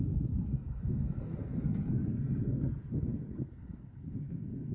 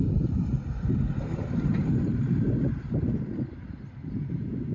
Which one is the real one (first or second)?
second